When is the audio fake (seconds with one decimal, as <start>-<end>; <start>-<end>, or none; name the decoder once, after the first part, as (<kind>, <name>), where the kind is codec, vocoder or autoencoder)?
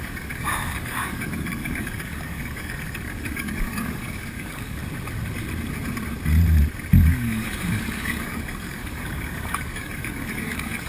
0.0-4.8 (codec, DAC); 7.1-10.9